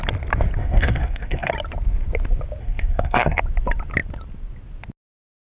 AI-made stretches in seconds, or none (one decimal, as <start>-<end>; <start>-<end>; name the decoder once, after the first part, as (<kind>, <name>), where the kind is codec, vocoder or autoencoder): 0.6-1.5 (codec, SNAC); 2.6-3.4

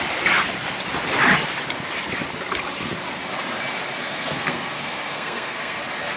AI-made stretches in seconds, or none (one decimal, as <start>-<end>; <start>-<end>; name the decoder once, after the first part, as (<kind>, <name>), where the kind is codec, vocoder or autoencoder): 4.0-5.8 (codec, SNAC)

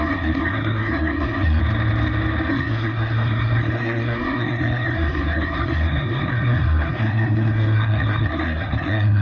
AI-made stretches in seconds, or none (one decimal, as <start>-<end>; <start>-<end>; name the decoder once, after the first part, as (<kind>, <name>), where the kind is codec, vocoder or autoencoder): 0.0-1.6 (codec, SNAC); 2.5-9.2

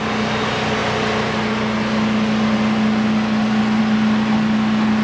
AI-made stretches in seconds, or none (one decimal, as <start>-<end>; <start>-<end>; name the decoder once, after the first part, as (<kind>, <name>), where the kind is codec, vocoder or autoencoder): none